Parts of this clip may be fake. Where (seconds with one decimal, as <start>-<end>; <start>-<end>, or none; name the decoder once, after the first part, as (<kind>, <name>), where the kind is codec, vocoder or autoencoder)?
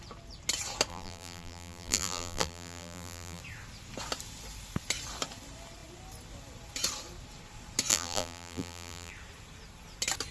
0.9-3.4 (vocoder, BigVGAN v2); 7.9-9.1